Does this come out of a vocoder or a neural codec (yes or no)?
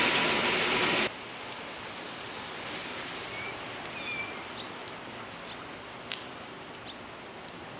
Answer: no